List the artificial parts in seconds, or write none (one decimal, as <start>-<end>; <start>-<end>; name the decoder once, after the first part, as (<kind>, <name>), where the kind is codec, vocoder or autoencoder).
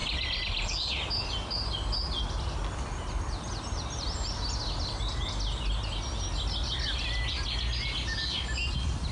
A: 0.0-0.9 (vocoder, BigVGAN v2)